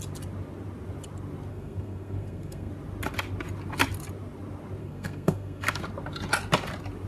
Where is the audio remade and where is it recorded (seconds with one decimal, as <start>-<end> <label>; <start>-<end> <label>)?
0.0-1.5 recorded; 1.5-2.7 remade; 2.7-4.8 recorded; 4.8-5.8 remade; 5.8-7.1 recorded